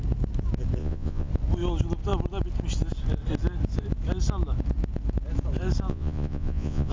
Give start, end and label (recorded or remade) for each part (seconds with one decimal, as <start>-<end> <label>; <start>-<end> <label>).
0.0-0.8 recorded; 0.8-1.3 remade; 1.3-5.9 recorded; 5.9-6.9 remade